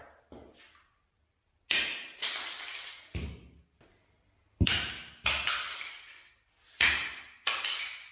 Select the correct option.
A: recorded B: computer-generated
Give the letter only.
A